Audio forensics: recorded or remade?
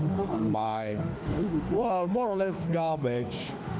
remade